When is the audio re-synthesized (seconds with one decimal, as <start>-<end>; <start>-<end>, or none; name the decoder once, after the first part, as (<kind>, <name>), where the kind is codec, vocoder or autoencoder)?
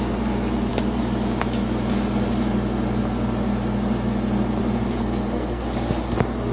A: 5.0-5.6 (codec, SNAC)